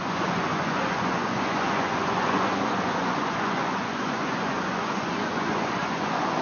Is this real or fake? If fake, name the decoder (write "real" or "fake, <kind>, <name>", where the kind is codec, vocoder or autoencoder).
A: fake, vocoder, Vocos